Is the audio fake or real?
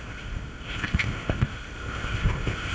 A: fake